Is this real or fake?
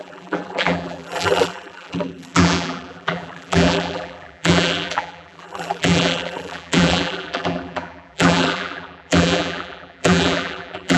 fake